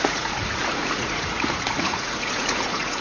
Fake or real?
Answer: fake